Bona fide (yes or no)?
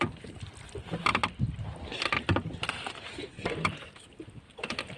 yes